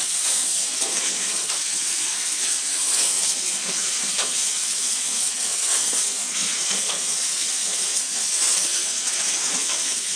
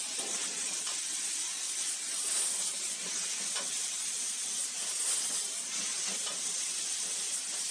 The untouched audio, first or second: second